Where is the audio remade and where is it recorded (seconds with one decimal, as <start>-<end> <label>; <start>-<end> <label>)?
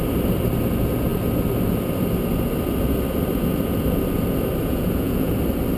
0.0-4.6 recorded; 4.6-5.3 remade; 5.3-5.8 recorded